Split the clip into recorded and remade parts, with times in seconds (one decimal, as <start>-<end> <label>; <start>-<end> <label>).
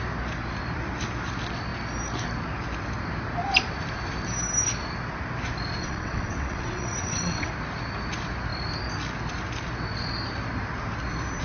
0.0-5.8 recorded; 5.8-7.5 remade; 7.5-11.4 recorded